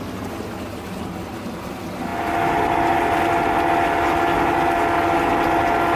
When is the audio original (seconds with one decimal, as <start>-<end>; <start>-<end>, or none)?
0.0-6.0